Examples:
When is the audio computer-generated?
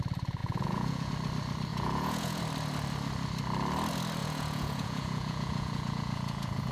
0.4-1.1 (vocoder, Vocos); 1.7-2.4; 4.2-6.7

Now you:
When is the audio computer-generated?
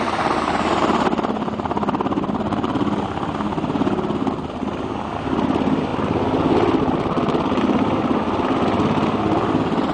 none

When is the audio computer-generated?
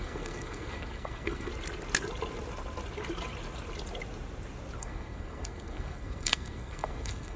0.0-1.5 (codec, SNAC); 4.8-7.4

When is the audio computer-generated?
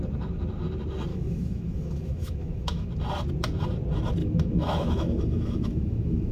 1.1-2.9 (autoencoder, DAC-VAE); 4.2-6.3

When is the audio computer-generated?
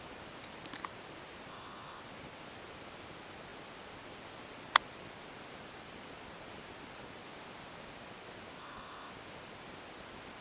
1.5-2.0 (codec, HILCodec); 8.6-9.1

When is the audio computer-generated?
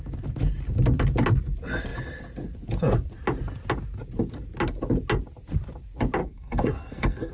6.2-7.3 (codec, SNAC)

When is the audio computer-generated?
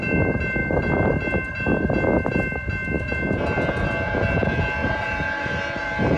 4.8-6.2 (vocoder, BigVGAN v2)